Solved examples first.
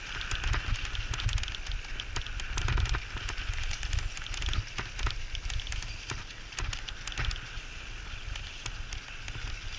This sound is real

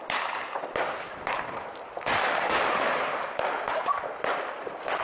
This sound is real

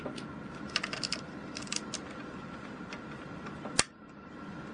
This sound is real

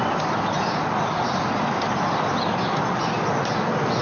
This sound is real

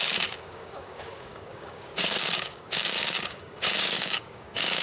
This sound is fake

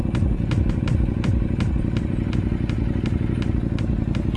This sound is real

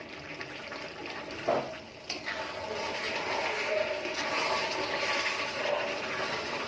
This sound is real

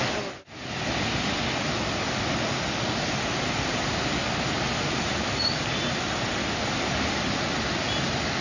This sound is real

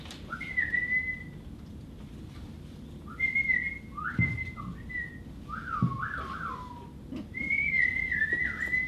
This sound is real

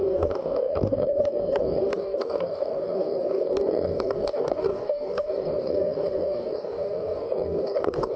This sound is fake